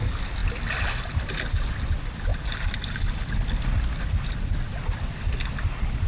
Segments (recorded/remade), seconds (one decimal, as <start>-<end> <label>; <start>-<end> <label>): 0.0-6.1 recorded

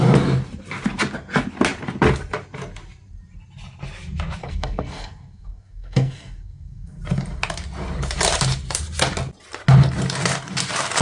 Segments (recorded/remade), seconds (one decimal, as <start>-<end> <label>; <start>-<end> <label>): 0.0-4.4 recorded; 4.4-7.0 remade; 7.0-11.0 recorded

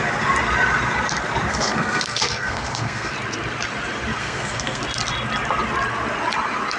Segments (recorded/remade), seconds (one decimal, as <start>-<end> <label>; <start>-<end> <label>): 0.0-1.5 recorded; 1.5-3.1 remade; 3.1-4.2 recorded; 4.2-4.8 remade; 4.8-6.8 recorded

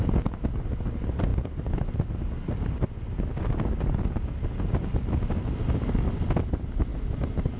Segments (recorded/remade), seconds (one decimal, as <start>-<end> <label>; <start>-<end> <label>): 0.0-7.6 recorded